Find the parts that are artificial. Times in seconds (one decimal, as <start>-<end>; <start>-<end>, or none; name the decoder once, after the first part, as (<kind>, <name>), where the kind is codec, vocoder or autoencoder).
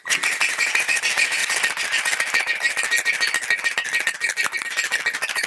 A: none